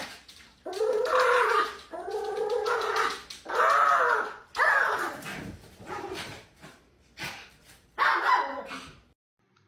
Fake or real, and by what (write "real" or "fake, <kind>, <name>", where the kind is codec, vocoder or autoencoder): fake, vocoder, BigVGAN v2